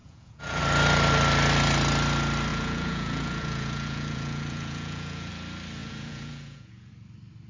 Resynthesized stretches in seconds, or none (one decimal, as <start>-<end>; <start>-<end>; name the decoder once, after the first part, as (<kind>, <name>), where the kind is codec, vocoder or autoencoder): 0.0-0.6 (vocoder, Vocos); 2.5-5.3; 5.8-6.9